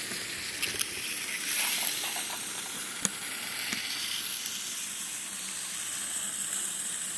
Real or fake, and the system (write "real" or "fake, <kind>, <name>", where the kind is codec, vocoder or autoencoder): real